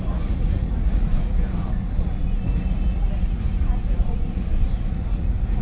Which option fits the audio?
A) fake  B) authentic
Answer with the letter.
A